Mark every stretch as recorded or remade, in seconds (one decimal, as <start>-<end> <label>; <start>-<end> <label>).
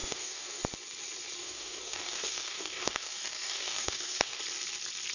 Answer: 0.0-0.6 remade; 0.6-1.4 recorded; 1.4-4.4 remade; 4.4-5.1 recorded